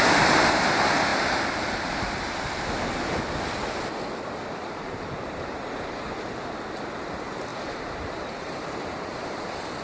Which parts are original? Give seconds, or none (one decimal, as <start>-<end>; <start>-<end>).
0.0-1.1; 3.2-4.6; 5.9-7.5